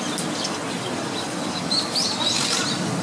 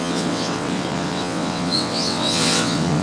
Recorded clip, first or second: first